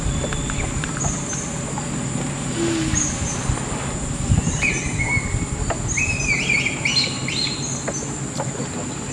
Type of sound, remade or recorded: recorded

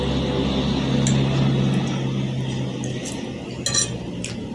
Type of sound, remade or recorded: recorded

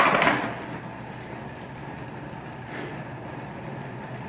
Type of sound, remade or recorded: recorded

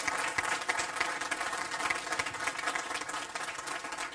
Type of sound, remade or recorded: recorded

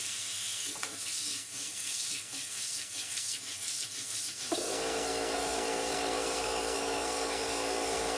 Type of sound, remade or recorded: remade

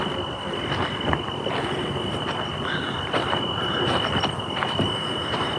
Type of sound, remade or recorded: recorded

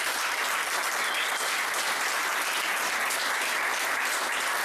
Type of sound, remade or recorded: recorded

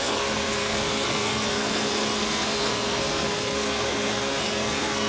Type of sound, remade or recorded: remade